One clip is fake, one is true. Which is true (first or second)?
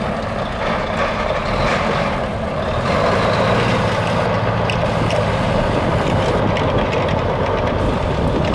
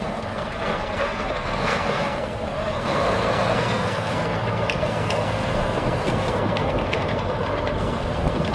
first